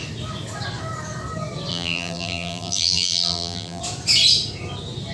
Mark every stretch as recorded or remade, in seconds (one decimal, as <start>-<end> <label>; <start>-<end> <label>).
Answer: 0.0-1.7 recorded; 1.7-3.8 remade; 3.8-5.1 recorded